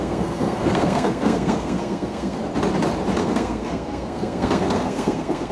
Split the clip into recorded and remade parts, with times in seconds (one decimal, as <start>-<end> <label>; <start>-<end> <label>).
0.0-2.4 remade; 2.4-3.2 recorded; 3.2-5.5 remade